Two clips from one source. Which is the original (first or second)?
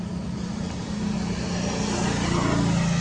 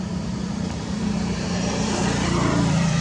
first